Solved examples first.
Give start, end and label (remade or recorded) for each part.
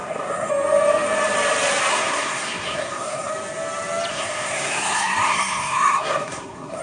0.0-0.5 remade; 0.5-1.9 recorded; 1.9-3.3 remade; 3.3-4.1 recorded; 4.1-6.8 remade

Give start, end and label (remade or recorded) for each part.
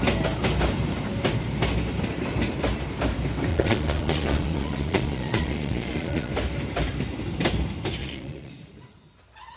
0.0-3.5 recorded; 3.5-6.3 remade; 6.3-8.0 recorded; 8.0-8.5 remade; 8.5-9.6 recorded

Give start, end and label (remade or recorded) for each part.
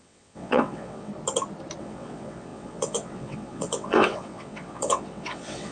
0.0-1.1 remade; 1.1-1.8 recorded; 1.8-5.7 remade